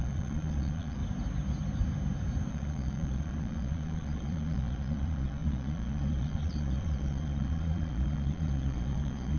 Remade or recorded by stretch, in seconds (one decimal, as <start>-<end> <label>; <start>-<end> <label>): 0.0-1.0 remade; 1.0-2.5 recorded; 2.5-9.4 remade